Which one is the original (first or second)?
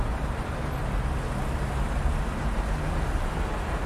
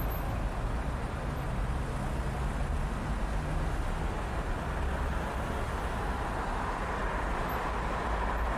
second